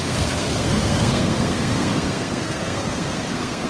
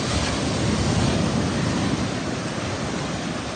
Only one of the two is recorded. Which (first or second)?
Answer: second